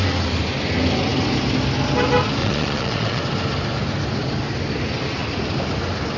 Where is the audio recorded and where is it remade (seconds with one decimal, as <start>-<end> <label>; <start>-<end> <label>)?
0.0-2.4 recorded; 2.4-3.2 remade; 3.2-6.2 recorded